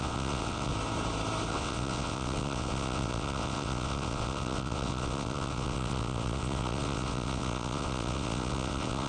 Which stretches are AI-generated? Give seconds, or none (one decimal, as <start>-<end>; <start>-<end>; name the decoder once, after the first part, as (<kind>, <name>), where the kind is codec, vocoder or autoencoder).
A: 0.0-0.7 (vocoder, WaveNeXt); 1.5-9.1